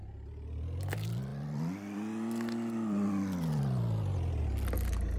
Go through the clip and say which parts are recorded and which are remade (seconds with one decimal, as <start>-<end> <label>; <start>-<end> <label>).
0.0-5.2 recorded